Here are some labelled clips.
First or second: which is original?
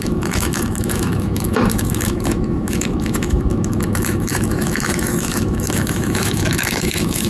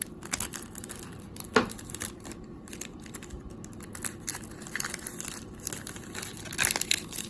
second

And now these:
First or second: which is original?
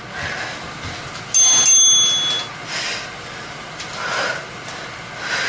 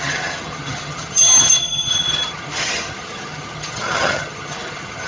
first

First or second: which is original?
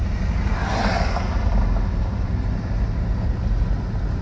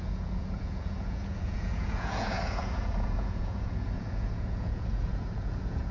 first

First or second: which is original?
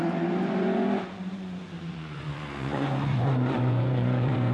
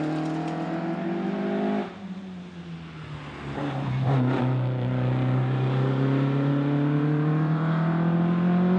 second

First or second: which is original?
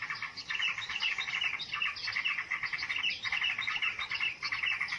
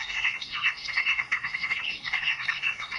first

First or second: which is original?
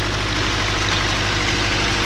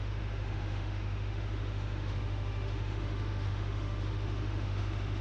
first